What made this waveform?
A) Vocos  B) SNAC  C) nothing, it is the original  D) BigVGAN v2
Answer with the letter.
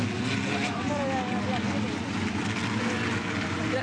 C